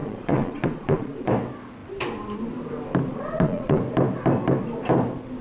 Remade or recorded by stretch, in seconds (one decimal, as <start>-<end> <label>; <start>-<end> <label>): 0.0-1.3 remade; 1.3-3.1 recorded; 3.1-3.8 remade; 3.8-5.4 recorded